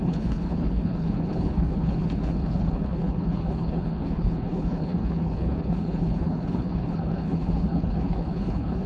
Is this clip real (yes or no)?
no